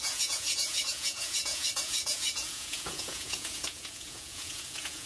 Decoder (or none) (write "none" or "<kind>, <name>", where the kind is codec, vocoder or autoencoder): vocoder, Vocos